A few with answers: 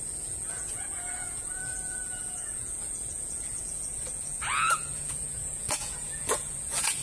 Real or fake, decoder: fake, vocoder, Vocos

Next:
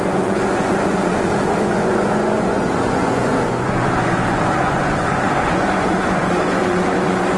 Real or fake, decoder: fake, vocoder, Vocos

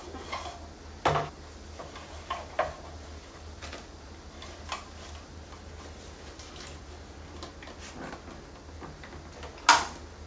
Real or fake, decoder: real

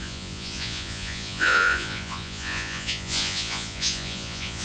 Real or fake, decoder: fake, vocoder, Vocos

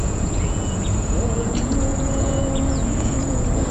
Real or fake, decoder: fake, vocoder, Vocos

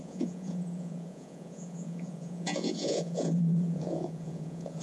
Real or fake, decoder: fake, vocoder, Vocos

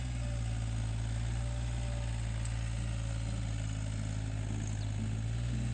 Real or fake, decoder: real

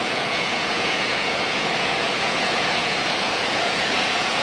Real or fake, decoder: fake, vocoder, Vocos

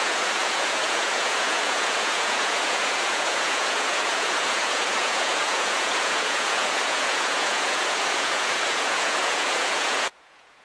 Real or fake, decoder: fake, vocoder, Vocos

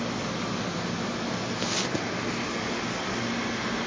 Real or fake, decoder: real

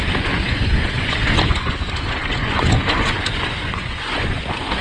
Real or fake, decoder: fake, vocoder, Vocos